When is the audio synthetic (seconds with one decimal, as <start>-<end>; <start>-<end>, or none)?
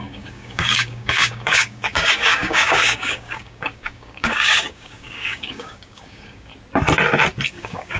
0.0-6.5; 7.5-8.0